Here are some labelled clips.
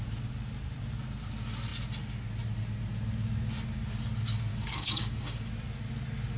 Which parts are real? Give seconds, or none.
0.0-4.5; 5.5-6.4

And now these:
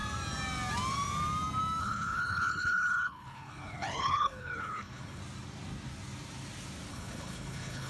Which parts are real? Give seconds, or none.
0.0-1.8; 5.2-6.9

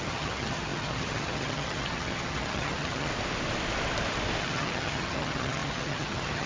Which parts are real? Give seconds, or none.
3.1-4.4

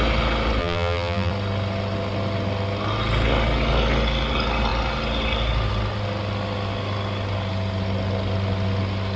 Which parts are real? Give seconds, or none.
0.0-0.6; 1.3-9.2

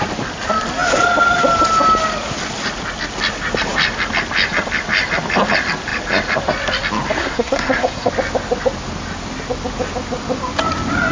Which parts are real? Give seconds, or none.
0.0-7.2; 8.1-11.1

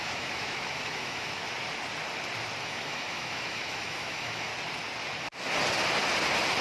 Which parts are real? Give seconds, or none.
1.4-2.6; 4.5-6.6

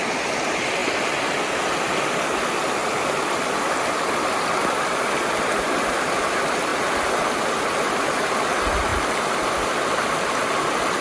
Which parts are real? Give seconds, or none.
0.0-2.8; 5.0-8.9; 9.7-11.0

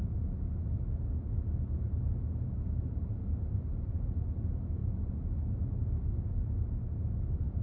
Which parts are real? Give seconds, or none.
0.0-7.6